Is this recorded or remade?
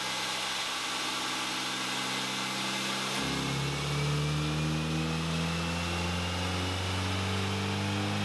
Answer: recorded